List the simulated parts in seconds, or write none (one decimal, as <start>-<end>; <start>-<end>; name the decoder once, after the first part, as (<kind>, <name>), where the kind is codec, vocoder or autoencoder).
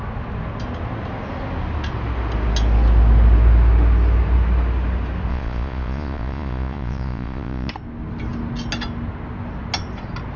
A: 5.3-7.7 (vocoder, Vocos)